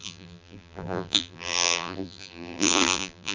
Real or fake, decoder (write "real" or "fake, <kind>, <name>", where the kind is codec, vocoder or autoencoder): fake, vocoder, BigVGAN v2